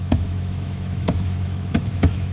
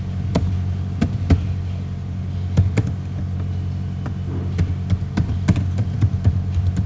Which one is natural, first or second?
second